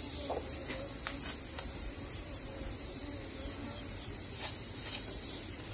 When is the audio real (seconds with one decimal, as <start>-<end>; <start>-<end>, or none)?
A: 0.6-1.9; 3.0-3.8